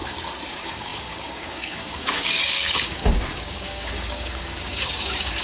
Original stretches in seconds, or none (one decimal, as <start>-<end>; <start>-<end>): 0.0-0.5